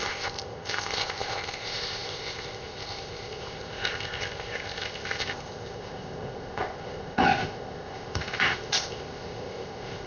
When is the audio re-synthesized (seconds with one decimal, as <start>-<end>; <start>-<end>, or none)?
0.0-10.1